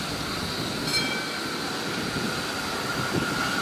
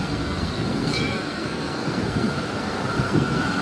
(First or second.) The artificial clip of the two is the second